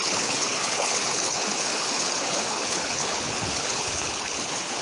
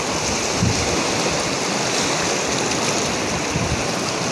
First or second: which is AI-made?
first